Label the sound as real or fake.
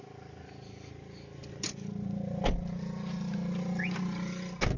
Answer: real